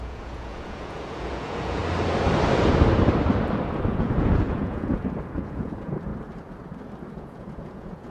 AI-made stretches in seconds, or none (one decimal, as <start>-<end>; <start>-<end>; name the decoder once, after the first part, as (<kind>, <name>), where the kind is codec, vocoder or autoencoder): 0.0-1.8 (vocoder, Vocos); 3.9-6.1; 7.1-8.1